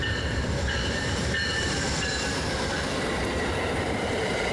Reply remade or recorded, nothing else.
remade